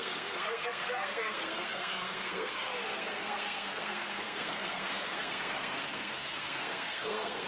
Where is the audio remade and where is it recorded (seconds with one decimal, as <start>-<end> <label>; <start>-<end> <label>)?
0.0-7.5 remade